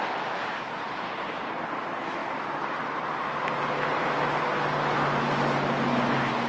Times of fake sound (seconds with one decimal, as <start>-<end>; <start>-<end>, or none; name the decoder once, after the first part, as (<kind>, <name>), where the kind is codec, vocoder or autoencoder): none